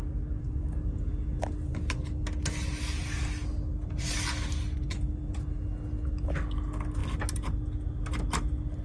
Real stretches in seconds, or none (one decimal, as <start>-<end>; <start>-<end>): 0.0-8.8